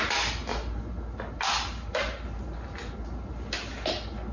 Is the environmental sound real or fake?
real